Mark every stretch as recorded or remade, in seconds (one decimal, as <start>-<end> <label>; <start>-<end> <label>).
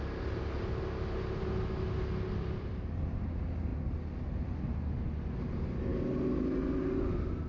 0.0-7.5 recorded